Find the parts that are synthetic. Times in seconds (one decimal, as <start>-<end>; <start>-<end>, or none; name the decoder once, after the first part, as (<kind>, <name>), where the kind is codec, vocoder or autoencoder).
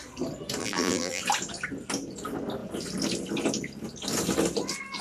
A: 0.6-1.2 (vocoder, BigVGAN v2)